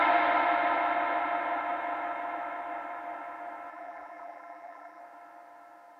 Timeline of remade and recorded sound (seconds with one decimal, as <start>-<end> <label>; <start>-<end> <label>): 0.0-3.7 recorded; 3.7-5.0 remade; 5.0-6.0 recorded